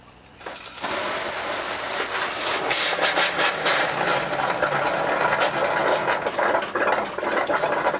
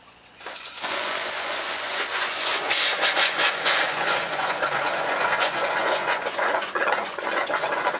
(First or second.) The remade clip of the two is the second